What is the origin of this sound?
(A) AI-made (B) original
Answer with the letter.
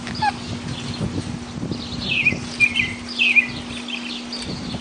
B